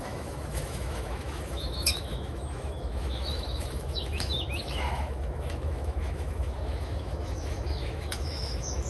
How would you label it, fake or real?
fake